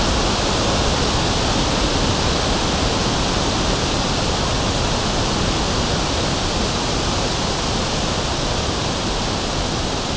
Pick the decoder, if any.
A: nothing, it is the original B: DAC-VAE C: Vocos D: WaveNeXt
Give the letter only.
A